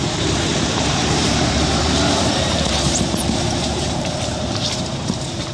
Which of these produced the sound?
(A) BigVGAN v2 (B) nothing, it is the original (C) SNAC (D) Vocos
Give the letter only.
A